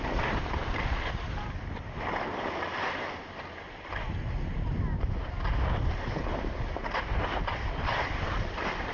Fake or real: real